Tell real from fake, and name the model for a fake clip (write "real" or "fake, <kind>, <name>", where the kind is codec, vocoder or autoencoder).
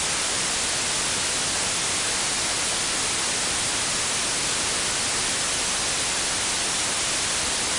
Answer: real